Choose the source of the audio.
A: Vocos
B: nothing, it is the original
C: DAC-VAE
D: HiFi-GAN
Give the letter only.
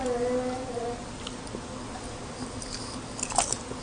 B